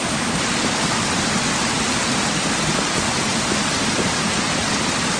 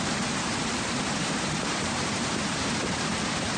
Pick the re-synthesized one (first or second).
second